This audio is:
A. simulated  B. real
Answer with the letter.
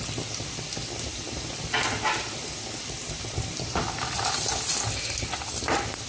B